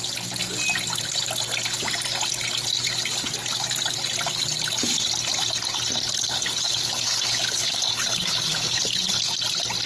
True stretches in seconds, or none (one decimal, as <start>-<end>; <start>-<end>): 0.0-6.0; 9.3-9.9